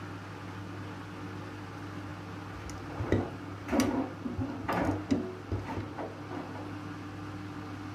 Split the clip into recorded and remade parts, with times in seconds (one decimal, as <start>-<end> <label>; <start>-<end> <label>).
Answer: 0.0-7.9 recorded